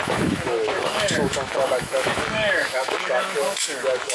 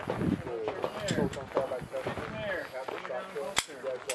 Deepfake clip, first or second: first